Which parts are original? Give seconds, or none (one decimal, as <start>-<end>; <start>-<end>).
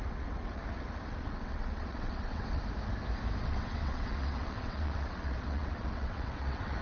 0.6-1.2; 2.6-3.4